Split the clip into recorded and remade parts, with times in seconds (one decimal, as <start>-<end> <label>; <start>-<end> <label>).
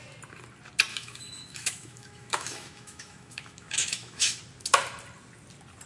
0.0-0.9 recorded; 0.9-4.4 remade; 4.4-5.9 recorded